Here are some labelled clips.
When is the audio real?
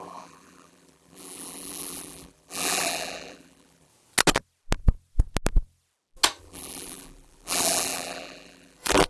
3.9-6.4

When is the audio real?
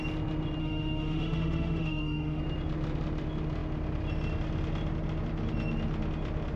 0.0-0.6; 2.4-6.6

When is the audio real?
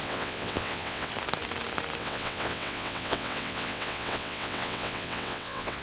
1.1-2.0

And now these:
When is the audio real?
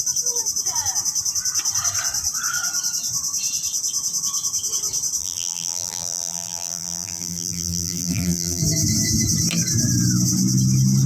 0.0-5.2; 8.6-11.1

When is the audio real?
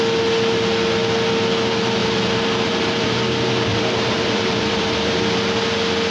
0.0-2.0; 3.2-3.7; 5.2-6.1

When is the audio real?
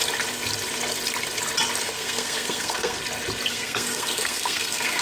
0.0-1.8; 3.0-3.5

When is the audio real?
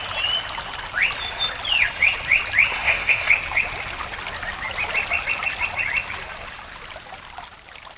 0.0-2.7; 3.3-8.0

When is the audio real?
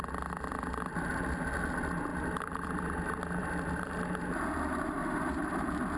0.0-6.0